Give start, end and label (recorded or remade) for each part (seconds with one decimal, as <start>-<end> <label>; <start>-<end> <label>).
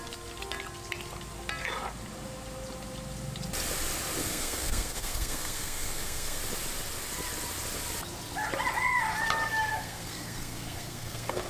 0.0-4.2 recorded; 4.2-6.4 remade; 6.4-9.7 recorded; 9.7-11.5 remade